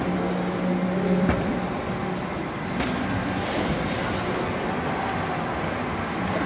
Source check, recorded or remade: recorded